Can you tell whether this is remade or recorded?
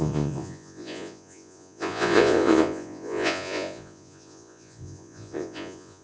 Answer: remade